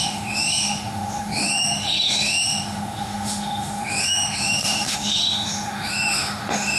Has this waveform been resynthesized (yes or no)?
yes